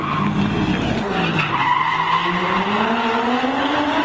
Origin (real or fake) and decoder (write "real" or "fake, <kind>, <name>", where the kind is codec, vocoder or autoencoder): real